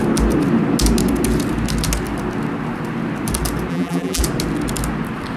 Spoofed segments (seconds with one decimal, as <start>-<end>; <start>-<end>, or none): 3.7-4.2